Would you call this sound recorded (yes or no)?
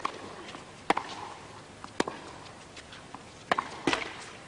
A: yes